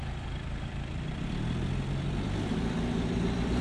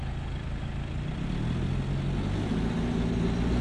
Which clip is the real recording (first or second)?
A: second